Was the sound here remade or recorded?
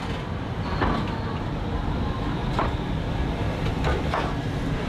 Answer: recorded